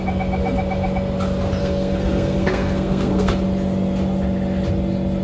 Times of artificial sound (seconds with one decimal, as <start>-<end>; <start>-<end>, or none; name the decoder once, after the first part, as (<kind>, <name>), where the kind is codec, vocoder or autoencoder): 1.6-3.3 (codec, SNAC)